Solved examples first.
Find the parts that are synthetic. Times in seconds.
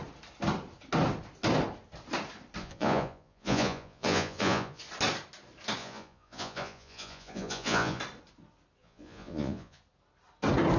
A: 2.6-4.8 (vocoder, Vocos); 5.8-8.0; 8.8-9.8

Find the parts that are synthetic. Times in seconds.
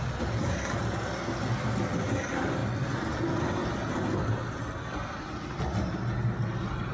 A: none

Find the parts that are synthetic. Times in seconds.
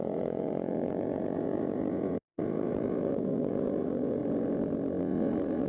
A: 0.0-4.2 (vocoder, Vocos); 5.0-5.7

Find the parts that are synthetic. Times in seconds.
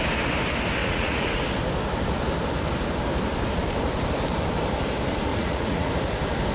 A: 0.8-1.4 (vocoder, Vocos); 5.3-5.9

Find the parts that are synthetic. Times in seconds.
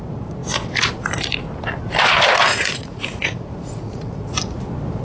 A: 2.5-4.3 (vocoder, Vocos)